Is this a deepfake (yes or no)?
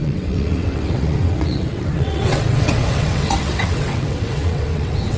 yes